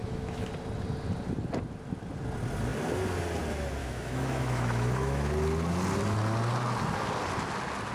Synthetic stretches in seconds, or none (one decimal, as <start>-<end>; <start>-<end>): 0.0-0.5; 3.8-5.3